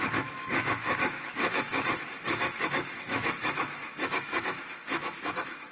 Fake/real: fake